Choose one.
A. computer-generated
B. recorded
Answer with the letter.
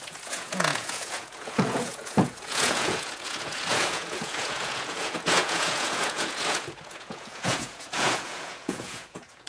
A